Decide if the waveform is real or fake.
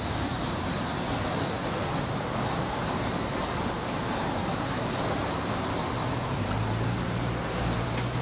fake